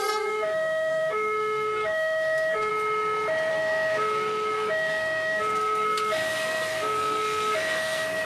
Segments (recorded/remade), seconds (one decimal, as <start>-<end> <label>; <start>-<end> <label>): 0.0-2.7 remade; 2.7-3.5 recorded; 3.5-8.3 remade